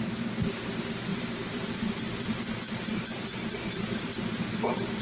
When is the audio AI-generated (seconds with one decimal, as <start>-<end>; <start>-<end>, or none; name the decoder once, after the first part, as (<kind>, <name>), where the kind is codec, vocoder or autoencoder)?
1.1-4.1 (vocoder, BigVGAN v2)